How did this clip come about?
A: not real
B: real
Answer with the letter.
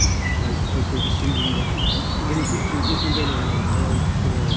B